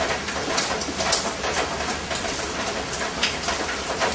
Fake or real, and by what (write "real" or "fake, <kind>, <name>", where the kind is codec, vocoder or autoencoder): fake, vocoder, BigVGAN v2